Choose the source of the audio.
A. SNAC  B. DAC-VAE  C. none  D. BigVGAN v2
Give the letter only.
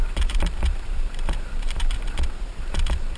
D